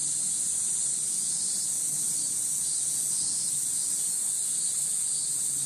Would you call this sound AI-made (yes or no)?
no